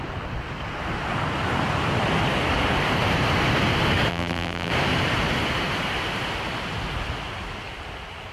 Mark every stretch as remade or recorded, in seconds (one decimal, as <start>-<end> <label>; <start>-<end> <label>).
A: 0.0-4.1 recorded; 4.1-4.7 remade; 4.7-8.3 recorded